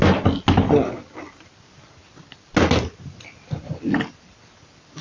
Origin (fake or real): real